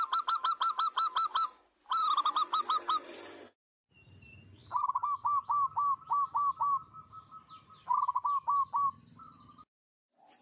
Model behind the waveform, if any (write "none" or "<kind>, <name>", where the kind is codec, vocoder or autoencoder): none